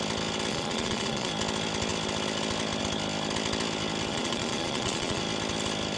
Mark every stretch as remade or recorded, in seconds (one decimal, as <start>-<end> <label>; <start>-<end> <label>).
0.0-0.5 recorded; 0.5-1.3 remade; 1.3-4.1 recorded; 4.1-5.2 remade; 5.2-6.0 recorded